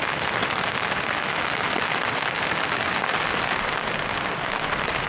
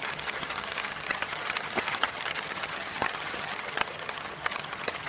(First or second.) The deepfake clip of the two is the second